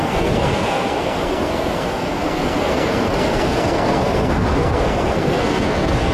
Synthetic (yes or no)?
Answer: yes